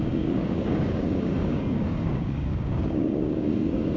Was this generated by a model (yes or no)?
yes